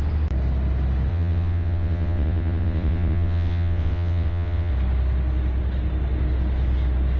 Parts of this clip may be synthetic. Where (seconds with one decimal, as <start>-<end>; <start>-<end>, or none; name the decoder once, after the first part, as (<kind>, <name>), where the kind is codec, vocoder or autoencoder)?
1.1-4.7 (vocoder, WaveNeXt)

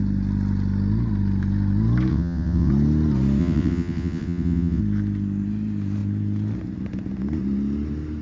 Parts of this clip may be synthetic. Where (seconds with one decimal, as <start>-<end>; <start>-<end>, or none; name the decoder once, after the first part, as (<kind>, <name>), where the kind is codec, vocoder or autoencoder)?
2.1-2.7 (vocoder, WaveNeXt); 3.4-4.8

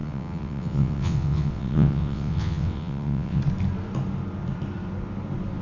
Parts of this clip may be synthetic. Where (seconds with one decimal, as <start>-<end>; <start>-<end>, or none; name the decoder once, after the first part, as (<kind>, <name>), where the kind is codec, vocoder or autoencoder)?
0.0-3.4 (vocoder, WaveNeXt)

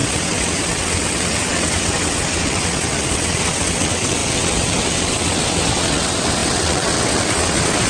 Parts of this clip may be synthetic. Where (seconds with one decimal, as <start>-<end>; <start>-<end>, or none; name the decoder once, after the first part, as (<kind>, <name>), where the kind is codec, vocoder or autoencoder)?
0.0-7.9 (vocoder, WaveNeXt)

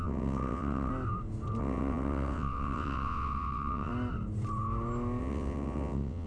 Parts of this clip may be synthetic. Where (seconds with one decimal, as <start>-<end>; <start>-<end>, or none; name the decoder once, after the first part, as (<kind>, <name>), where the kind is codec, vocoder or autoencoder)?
0.0-0.9 (vocoder, WaveNeXt); 1.6-3.9; 5.2-6.3

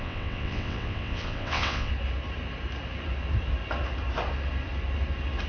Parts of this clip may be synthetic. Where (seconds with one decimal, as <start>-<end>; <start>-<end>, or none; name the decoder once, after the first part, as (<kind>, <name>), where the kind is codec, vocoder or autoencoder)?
0.0-1.9 (vocoder, WaveNeXt)